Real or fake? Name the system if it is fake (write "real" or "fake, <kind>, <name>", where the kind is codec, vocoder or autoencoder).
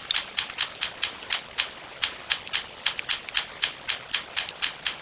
real